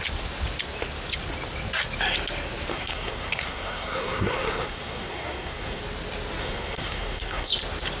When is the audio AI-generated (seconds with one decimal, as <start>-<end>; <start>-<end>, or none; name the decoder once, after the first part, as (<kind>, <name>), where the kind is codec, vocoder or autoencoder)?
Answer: 2.7-5.8 (codec, SNAC); 6.4-7.5